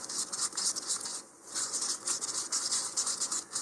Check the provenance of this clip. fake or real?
fake